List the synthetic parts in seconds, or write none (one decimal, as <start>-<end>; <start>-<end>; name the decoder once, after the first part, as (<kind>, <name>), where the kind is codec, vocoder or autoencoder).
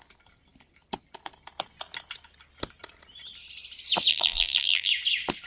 4.1-4.9 (vocoder, BigVGAN v2)